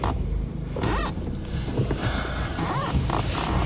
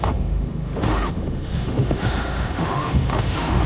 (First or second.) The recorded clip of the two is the first